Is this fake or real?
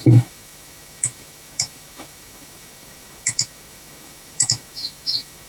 fake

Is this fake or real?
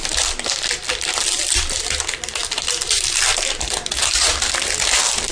real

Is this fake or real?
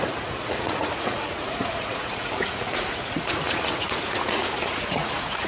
fake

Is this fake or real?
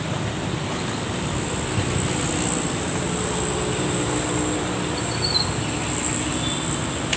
real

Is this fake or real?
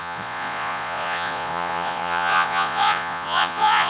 fake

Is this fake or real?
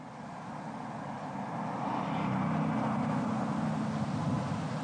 real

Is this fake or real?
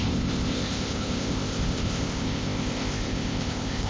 fake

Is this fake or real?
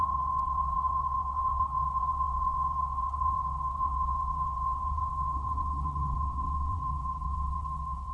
fake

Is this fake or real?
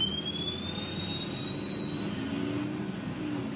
real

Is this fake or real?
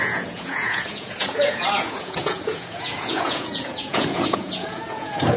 fake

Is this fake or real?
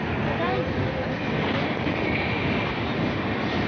real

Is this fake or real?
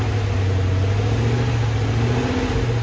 real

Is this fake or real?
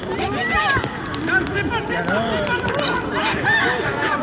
real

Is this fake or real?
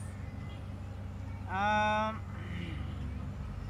real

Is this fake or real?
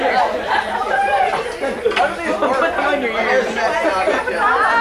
real